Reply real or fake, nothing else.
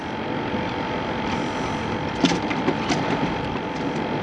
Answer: real